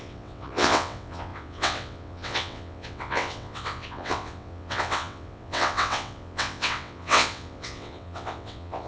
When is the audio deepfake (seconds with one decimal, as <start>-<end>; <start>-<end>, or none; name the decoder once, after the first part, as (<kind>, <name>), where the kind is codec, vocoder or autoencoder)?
0.0-8.9 (vocoder, WaveNeXt)